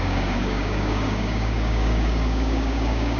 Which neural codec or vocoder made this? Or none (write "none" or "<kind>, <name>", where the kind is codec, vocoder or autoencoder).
codec, DAC